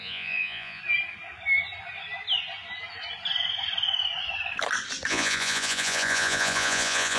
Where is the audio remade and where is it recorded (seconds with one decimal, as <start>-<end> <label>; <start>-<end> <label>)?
0.0-0.8 remade; 0.8-5.1 recorded; 5.1-7.2 remade